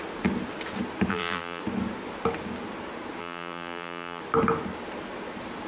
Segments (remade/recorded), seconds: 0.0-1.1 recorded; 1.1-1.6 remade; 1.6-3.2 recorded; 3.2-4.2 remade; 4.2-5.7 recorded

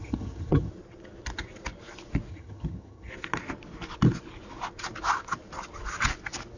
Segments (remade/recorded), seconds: 0.0-0.7 remade; 0.7-2.3 recorded; 2.3-3.1 remade; 3.1-6.6 recorded

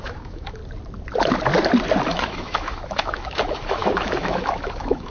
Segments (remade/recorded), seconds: 0.0-0.6 remade; 0.6-2.0 recorded; 2.0-5.1 remade

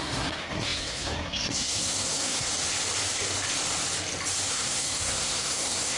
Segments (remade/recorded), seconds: 0.0-2.5 remade; 2.5-4.5 recorded; 4.5-6.0 remade